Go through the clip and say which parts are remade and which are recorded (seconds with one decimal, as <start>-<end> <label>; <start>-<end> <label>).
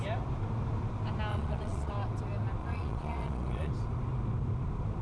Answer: 0.0-1.3 recorded; 1.3-1.9 remade; 1.9-2.6 recorded; 2.6-3.7 remade; 3.7-5.0 recorded